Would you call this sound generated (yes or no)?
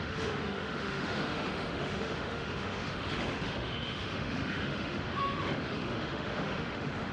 yes